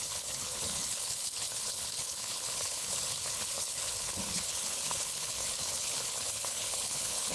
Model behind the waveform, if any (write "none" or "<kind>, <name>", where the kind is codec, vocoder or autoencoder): codec, HILCodec